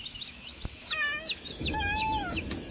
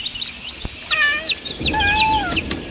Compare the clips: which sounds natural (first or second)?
second